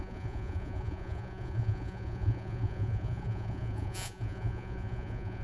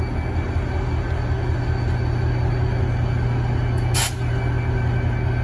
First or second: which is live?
second